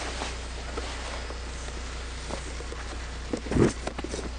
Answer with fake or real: real